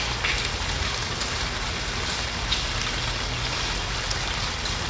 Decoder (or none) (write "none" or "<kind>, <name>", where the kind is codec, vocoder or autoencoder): none